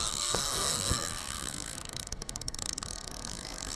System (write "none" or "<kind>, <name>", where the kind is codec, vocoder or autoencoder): codec, SNAC